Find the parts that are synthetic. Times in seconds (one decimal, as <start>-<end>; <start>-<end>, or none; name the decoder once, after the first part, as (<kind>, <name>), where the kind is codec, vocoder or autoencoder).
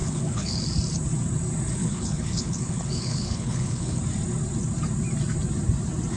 0.0-0.6 (codec, HILCodec); 1.8-4.0